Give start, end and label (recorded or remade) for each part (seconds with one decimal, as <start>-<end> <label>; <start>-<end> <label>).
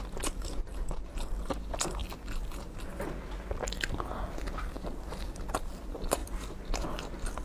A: 0.0-2.0 remade; 2.0-4.6 recorded; 4.6-6.2 remade; 6.2-6.9 recorded; 6.9-7.4 remade